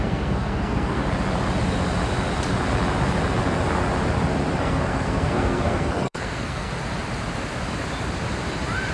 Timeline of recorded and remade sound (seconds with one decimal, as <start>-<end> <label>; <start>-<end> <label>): 0.0-1.0 remade; 1.0-4.6 recorded; 4.6-6.7 remade; 6.7-8.9 recorded

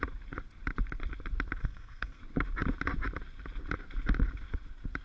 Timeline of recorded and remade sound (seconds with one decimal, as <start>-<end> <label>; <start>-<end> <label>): 0.0-1.6 recorded; 1.6-2.2 remade; 2.2-5.0 recorded

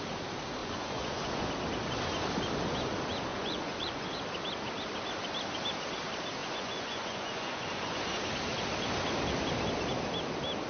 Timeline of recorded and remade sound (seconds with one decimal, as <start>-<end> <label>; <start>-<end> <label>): 0.0-0.6 recorded; 0.6-1.5 remade; 1.5-3.3 recorded; 3.3-4.1 remade; 4.1-6.4 recorded; 6.4-8.2 remade; 8.2-10.7 recorded

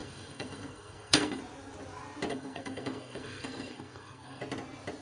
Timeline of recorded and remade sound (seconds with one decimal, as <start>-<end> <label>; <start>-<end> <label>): 0.0-1.4 remade; 1.4-2.3 recorded; 2.3-4.4 remade; 4.4-5.0 recorded

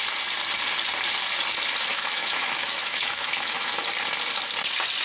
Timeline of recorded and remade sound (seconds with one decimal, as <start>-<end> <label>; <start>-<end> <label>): 0.0-1.9 recorded; 1.9-3.7 remade; 3.7-5.0 recorded

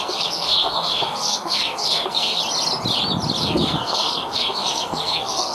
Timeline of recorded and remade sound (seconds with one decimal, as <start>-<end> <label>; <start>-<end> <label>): 0.0-2.4 remade; 2.4-3.4 recorded; 3.4-5.5 remade

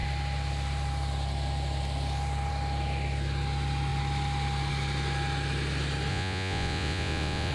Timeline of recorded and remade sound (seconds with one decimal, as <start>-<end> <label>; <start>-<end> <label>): 0.0-6.1 recorded; 6.1-7.5 remade